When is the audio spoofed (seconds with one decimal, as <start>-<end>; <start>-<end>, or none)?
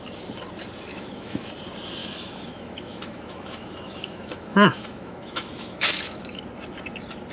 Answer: 0.9-1.5; 2.0-6.4